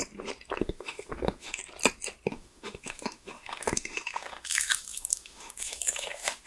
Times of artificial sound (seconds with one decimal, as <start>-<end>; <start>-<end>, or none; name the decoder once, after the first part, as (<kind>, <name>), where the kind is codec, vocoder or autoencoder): 0.6-1.6 (autoencoder, DAC-VAE); 2.3-6.5